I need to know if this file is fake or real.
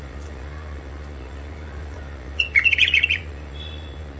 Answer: fake